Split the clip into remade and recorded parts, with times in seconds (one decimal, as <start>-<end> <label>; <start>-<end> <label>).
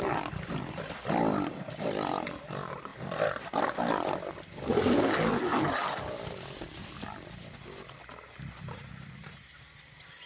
0.0-10.3 recorded